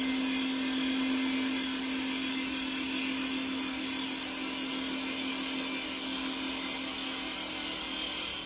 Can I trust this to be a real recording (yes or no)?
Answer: yes